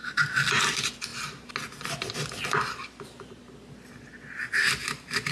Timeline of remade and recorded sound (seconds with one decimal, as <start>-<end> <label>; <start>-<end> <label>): 0.0-5.3 recorded